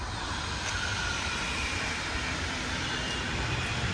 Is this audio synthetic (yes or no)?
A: yes